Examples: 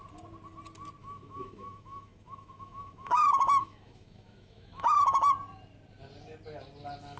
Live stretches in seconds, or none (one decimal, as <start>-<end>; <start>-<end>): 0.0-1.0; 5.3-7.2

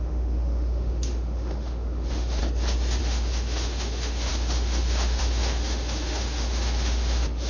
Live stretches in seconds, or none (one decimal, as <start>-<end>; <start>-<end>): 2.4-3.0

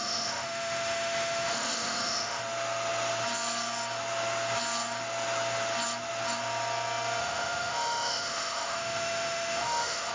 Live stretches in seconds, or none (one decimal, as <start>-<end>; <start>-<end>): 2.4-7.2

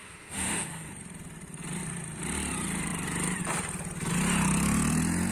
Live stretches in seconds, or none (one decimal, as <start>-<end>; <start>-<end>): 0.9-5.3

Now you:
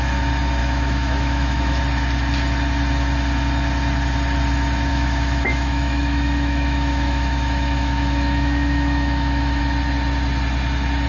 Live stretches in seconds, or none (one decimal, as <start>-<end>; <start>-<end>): 0.0-0.6; 1.8-4.9; 9.6-11.1

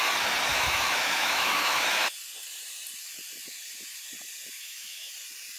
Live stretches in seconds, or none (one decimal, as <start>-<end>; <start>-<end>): 0.0-0.5; 2.1-4.6; 5.1-5.6